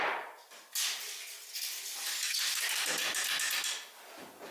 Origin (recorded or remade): recorded